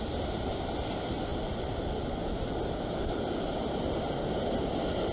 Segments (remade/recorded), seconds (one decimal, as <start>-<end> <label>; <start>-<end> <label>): 0.0-5.1 recorded